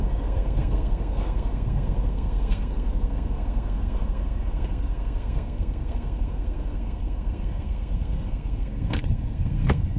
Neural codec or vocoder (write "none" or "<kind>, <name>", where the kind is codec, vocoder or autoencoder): codec, SNAC